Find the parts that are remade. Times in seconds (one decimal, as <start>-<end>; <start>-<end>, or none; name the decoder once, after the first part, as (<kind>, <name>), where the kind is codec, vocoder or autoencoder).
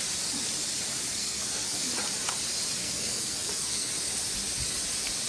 1.2-1.9 (codec, SNAC); 2.8-3.9